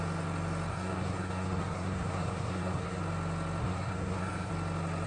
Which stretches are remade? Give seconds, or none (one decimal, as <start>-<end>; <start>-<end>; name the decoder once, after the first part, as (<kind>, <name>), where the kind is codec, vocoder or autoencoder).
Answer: 0.7-3.0 (codec, SNAC); 3.6-4.5